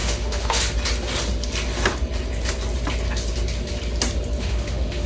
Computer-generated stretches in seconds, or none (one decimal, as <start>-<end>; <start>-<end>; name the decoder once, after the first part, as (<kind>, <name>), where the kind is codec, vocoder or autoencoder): 0.0-0.6 (autoencoder, DAC-VAE); 4.4-5.1